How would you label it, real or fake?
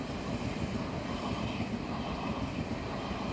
real